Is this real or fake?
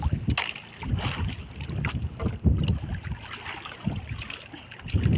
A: real